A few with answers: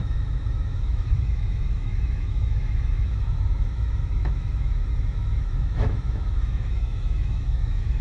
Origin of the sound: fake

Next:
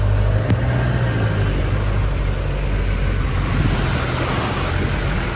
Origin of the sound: real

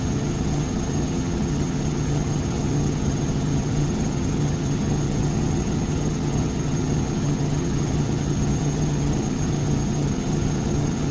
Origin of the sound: fake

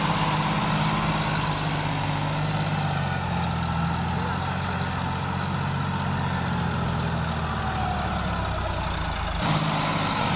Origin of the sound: real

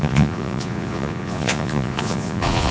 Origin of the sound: fake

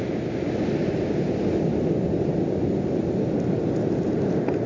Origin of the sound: real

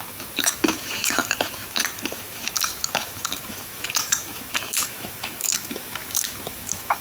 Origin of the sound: fake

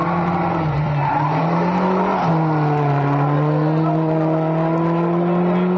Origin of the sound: real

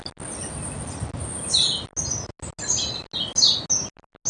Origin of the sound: real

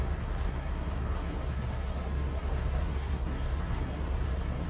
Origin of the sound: fake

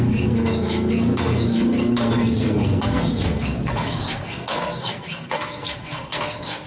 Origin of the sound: fake